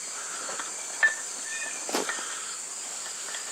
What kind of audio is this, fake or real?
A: fake